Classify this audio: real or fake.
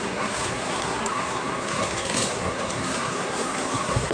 fake